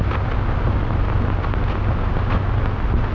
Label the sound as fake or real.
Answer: real